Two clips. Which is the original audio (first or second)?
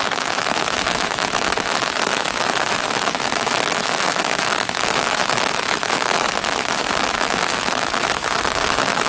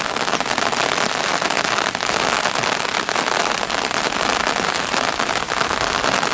second